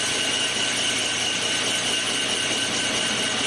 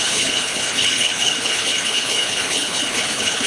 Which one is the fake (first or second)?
second